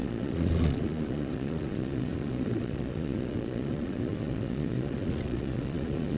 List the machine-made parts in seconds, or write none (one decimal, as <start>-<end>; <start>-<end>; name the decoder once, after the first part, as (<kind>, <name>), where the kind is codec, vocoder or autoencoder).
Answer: 0.0-6.2 (vocoder, Vocos)